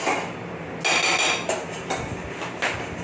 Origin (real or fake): real